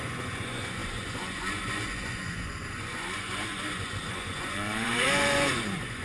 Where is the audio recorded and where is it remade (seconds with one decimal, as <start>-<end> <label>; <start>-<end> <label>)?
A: 0.0-6.0 remade

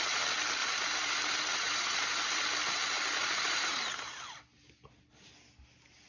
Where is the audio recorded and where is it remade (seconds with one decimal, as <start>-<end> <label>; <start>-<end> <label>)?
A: 0.0-0.6 recorded; 0.6-2.4 remade; 2.4-3.2 recorded; 3.2-4.2 remade; 4.2-6.1 recorded